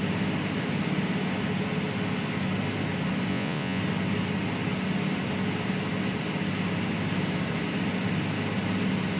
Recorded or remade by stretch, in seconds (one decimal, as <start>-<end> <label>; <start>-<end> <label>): 0.0-3.3 recorded; 3.3-3.8 remade; 3.8-9.2 recorded